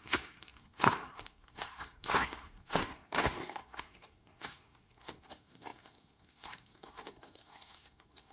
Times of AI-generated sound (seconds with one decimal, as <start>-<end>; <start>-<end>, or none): 0.0-8.3